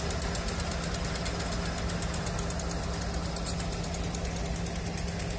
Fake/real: real